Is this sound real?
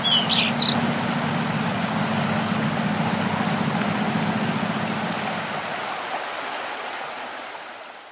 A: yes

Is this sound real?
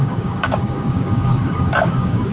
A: no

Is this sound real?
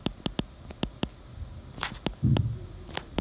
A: yes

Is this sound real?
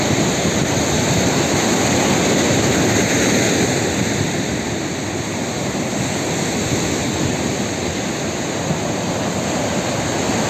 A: yes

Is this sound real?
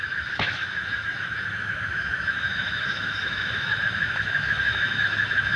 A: no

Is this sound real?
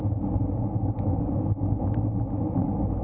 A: yes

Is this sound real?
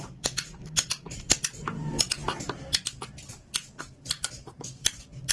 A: yes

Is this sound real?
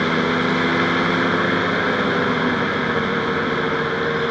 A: yes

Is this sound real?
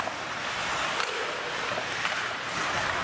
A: yes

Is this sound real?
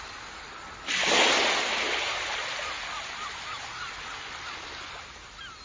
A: yes